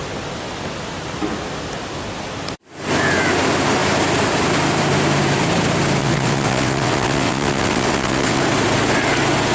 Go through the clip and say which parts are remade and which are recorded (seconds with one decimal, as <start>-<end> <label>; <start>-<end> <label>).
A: 0.0-6.0 recorded; 6.0-8.4 remade; 8.4-9.5 recorded